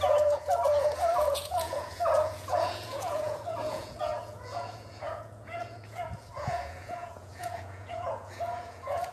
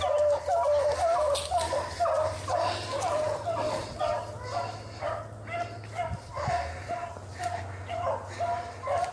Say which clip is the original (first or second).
second